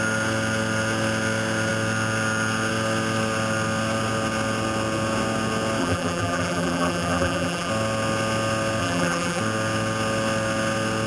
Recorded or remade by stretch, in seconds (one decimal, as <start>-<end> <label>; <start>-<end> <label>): 0.0-5.8 recorded; 5.8-7.7 remade; 7.7-8.8 recorded; 8.8-9.4 remade; 9.4-11.1 recorded